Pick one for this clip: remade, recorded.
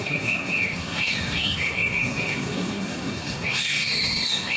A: remade